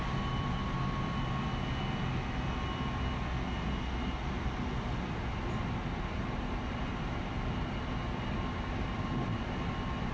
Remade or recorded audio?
recorded